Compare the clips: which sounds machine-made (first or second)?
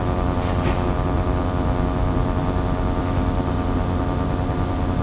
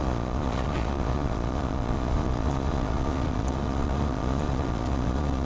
second